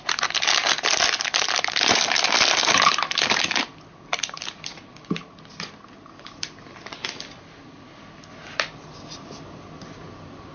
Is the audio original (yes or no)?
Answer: yes